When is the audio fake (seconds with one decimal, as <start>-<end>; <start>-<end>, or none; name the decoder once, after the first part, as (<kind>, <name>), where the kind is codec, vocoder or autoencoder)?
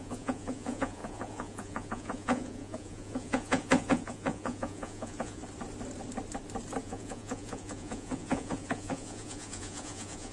0.0-5.4 (vocoder, Vocos); 6.8-10.3